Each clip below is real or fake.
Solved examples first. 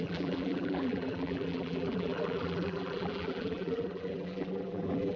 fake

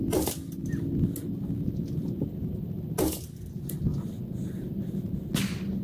real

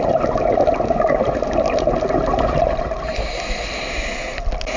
real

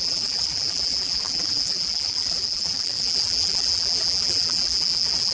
fake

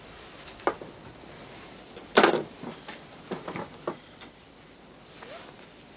fake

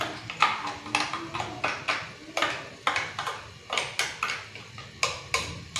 real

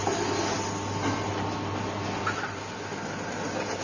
real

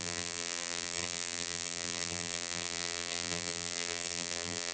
fake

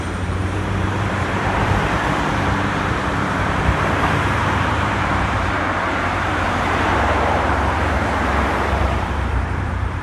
fake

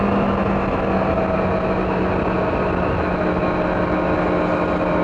real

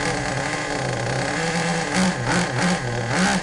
real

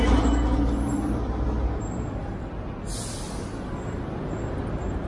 real